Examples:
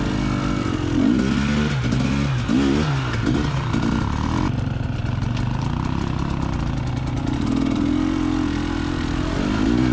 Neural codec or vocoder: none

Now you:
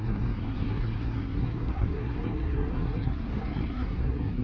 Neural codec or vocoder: codec, SNAC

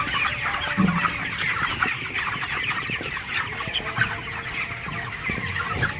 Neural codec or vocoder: none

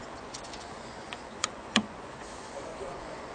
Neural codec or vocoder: vocoder, Vocos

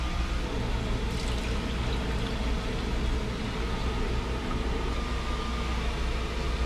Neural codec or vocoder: none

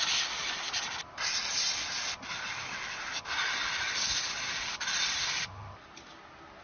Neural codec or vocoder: none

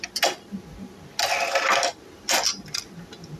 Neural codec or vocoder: none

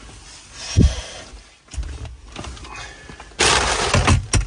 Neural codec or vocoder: none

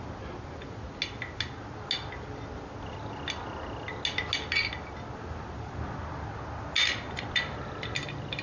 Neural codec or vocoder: none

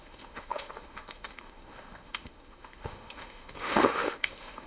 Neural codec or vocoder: autoencoder, DAC-VAE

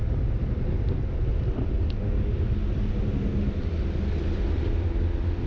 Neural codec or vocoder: none